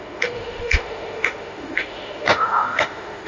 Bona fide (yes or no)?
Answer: no